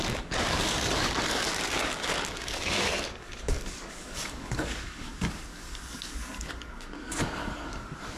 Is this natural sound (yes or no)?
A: no